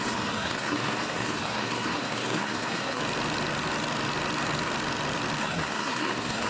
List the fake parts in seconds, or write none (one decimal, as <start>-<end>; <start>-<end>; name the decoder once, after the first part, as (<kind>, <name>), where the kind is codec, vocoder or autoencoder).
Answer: 0.0-3.0 (codec, SNAC); 5.4-6.5